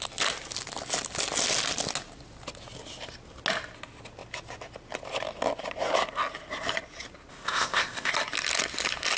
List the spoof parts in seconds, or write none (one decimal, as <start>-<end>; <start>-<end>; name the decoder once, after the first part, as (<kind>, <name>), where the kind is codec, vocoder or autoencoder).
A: 7.3-8.1 (codec, ZipCodec)